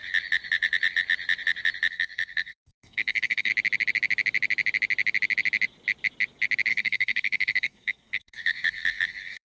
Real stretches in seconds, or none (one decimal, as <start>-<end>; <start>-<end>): 0.0-1.9; 3.5-6.7